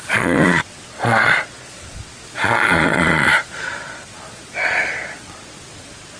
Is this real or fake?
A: fake